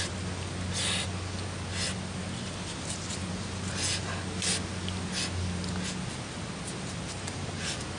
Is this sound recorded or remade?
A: recorded